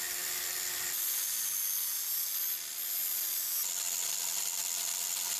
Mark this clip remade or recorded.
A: recorded